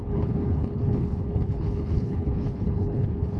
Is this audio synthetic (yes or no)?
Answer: yes